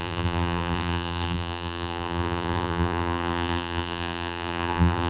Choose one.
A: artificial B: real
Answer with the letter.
A